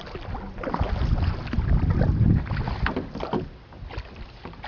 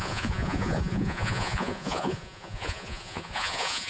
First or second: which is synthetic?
second